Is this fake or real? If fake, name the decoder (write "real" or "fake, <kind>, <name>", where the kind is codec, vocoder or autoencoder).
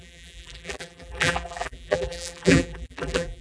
fake, vocoder, BigVGAN v2